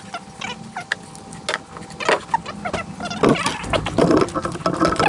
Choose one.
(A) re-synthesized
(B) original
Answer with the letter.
B